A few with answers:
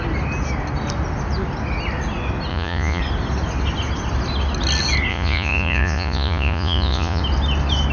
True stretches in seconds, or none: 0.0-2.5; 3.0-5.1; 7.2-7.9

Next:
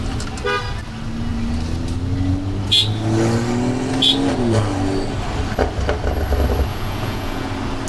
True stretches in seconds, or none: 0.0-6.7; 7.5-7.9

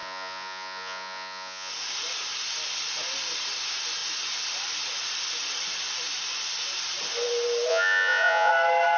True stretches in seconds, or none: 1.7-7.7; 8.5-9.0

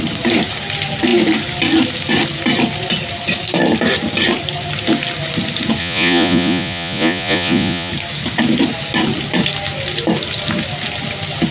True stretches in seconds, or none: 0.0-5.8; 7.9-11.5

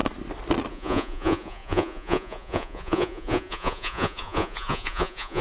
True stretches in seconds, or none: 0.0-0.7

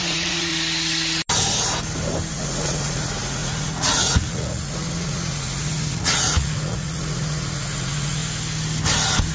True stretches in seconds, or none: 0.5-2.3; 8.2-9.3